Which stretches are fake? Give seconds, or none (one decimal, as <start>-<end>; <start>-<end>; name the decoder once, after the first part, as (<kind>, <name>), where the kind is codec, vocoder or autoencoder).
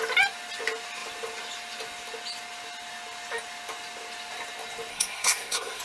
4.9-5.8 (codec, SNAC)